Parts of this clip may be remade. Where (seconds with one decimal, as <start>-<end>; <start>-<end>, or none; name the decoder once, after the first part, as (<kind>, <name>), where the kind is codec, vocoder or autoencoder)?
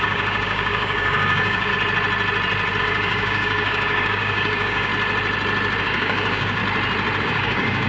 0.0-1.7 (codec, DAC); 2.8-4.9; 5.8-6.6; 7.2-7.9